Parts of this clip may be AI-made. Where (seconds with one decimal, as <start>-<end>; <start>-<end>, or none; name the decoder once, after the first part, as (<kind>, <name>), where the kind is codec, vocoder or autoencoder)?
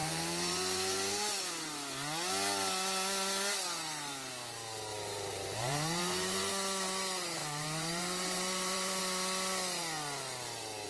0.0-1.5 (vocoder, BigVGAN v2); 4.9-6.5; 7.4-9.0